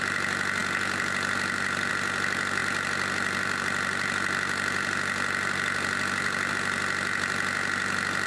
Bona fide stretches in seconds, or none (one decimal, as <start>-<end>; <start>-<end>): 0.0-2.6; 6.5-8.3